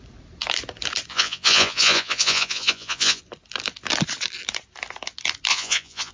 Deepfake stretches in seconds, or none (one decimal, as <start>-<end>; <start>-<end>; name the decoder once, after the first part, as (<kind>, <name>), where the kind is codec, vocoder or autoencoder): 1.1-3.2 (vocoder, Vocos); 5.5-6.1